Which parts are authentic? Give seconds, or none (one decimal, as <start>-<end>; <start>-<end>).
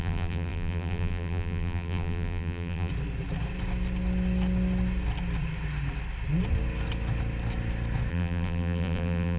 2.9-8.1